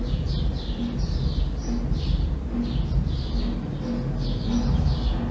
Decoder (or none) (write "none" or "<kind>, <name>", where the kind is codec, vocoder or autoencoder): none